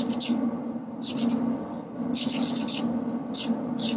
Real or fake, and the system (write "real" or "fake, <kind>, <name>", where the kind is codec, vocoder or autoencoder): real